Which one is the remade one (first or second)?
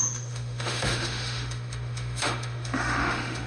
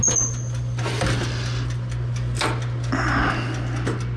first